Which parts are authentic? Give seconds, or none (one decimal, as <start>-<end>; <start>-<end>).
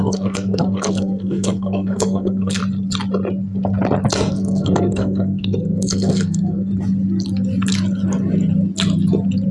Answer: 2.6-4.3; 6.7-9.5